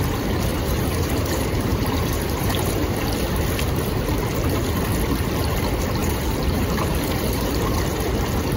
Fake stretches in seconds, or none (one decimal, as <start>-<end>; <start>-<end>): 0.5-3.1; 6.0-8.1